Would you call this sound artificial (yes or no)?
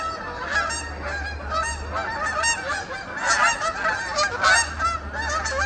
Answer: no